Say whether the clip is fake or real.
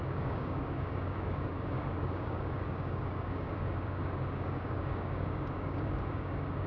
fake